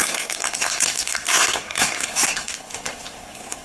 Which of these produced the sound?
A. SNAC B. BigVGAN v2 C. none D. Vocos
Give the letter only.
A